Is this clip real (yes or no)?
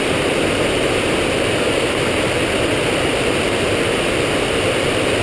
yes